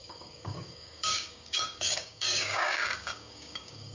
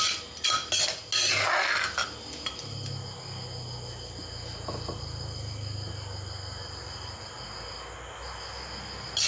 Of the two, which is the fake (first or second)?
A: first